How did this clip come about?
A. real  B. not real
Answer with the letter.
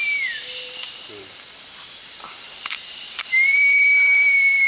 B